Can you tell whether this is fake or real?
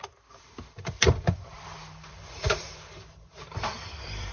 fake